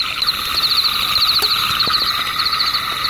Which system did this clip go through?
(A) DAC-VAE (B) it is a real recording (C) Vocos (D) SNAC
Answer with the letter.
B